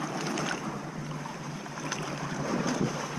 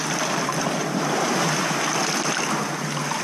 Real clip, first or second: second